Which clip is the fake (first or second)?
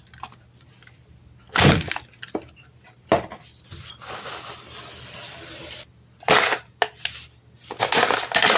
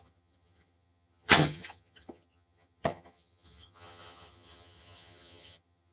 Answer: second